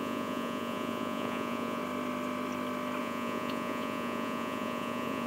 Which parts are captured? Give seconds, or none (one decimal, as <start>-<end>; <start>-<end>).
1.8-3.0